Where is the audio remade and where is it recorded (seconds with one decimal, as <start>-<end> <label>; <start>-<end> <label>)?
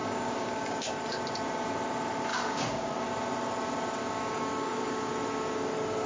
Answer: 0.0-1.0 remade; 1.0-2.3 recorded; 2.3-2.9 remade; 2.9-4.0 recorded; 4.0-5.1 remade; 5.1-6.1 recorded